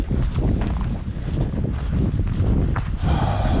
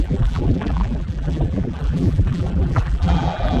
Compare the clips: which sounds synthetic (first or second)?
second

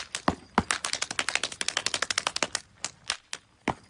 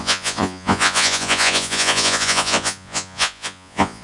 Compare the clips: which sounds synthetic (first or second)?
second